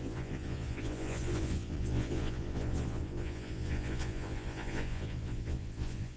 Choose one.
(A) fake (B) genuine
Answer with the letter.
A